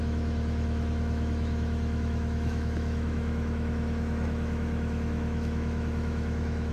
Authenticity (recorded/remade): remade